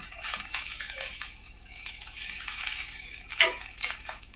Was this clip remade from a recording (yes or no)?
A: yes